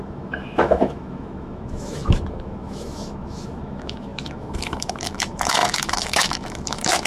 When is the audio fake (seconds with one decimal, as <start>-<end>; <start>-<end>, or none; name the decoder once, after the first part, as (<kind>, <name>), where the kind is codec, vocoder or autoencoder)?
0.0-7.1 (autoencoder, DAC-VAE)